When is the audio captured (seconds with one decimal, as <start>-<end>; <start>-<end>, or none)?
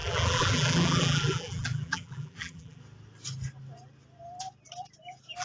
2.8-5.4